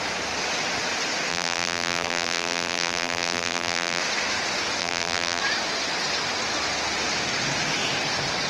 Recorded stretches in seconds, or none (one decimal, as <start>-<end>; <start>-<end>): 0.0-1.3; 4.0-4.8; 5.4-8.5